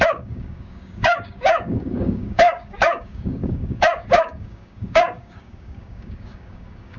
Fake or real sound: fake